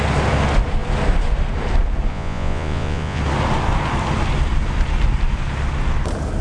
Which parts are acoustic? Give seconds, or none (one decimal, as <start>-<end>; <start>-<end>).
0.0-2.1; 3.2-6.4